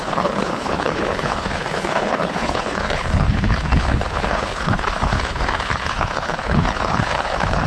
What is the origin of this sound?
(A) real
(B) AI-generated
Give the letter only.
B